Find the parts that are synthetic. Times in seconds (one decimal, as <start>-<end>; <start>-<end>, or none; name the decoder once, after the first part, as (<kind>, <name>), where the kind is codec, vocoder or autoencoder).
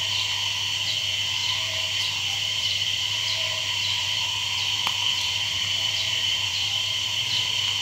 1.4-4.2 (vocoder, BigVGAN v2); 5.1-7.3